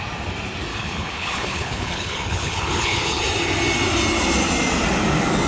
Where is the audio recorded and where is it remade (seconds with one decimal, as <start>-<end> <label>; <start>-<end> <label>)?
0.0-0.7 recorded; 0.7-3.2 remade; 3.2-5.5 recorded